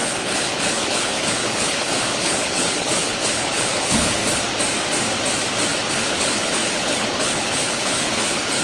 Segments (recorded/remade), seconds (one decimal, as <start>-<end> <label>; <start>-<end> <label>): 0.0-4.2 remade; 4.2-5.9 recorded; 5.9-8.6 remade